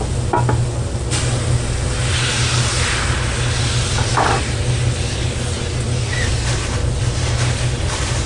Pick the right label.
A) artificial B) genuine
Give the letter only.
B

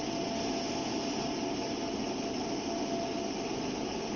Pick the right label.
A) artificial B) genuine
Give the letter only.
B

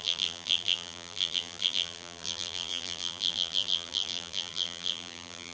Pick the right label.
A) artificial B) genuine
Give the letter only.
A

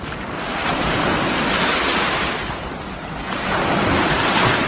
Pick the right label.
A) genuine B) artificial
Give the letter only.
A